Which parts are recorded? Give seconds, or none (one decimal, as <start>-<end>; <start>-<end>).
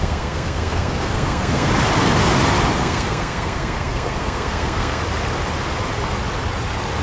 1.7-2.8; 5.0-7.0